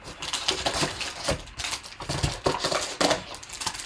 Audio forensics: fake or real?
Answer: real